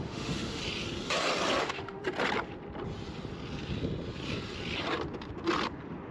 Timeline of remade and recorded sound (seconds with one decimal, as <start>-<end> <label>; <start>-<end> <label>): 0.0-0.6 remade; 0.6-1.6 recorded; 1.6-2.0 remade; 2.0-6.1 recorded